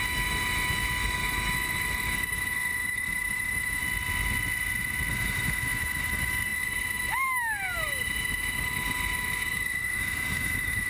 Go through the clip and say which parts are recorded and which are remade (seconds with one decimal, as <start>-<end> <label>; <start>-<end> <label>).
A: 0.0-3.8 remade; 3.8-5.1 recorded; 5.1-10.9 remade